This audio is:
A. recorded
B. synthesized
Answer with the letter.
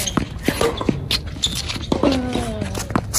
A